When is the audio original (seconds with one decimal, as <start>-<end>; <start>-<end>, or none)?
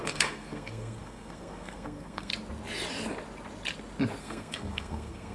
2.3-4.2